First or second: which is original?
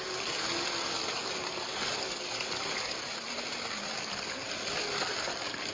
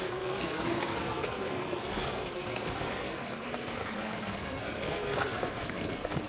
first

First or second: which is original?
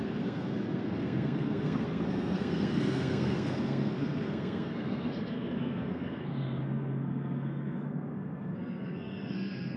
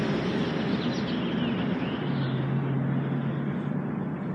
second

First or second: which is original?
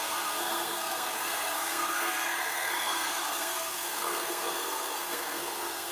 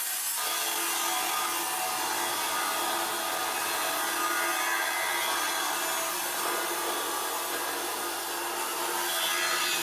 second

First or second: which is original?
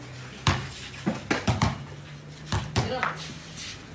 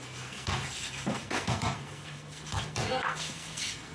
first